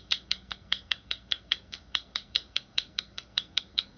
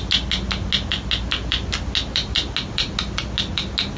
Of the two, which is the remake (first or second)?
first